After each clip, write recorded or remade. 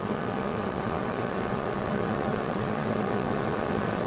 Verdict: remade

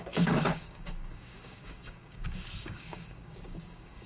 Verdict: remade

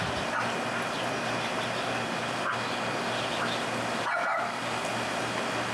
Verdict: recorded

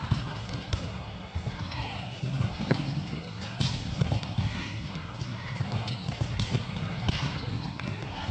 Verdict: remade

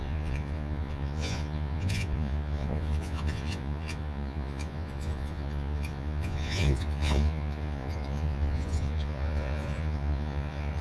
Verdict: remade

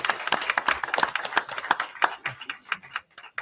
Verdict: recorded